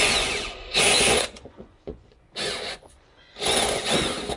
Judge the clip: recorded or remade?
remade